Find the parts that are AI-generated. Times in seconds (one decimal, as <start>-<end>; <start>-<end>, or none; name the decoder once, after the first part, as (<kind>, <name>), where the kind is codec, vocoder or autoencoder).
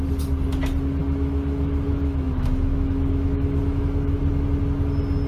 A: 1.0-4.2 (autoencoder, DAC-VAE)